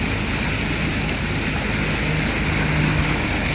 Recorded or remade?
recorded